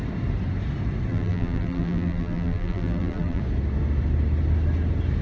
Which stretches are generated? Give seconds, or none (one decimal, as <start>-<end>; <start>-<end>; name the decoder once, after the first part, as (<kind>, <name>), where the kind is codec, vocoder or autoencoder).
1.1-3.4 (vocoder, BigVGAN v2)